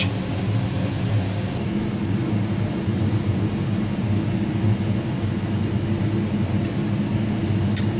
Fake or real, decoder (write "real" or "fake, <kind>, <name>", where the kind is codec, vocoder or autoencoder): real